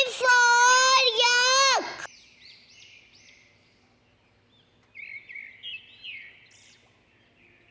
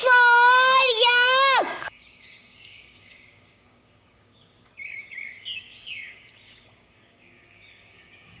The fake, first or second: second